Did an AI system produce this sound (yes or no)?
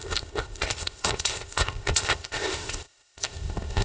yes